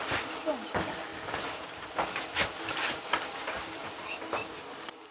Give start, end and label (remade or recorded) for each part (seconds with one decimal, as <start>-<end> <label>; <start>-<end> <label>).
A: 0.0-5.1 recorded